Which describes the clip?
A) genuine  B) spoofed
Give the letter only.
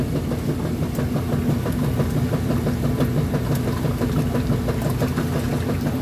A